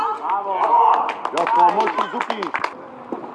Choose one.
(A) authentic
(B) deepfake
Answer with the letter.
A